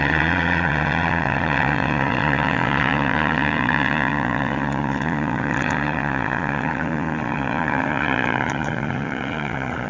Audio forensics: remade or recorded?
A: remade